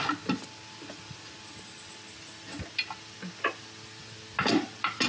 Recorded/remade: recorded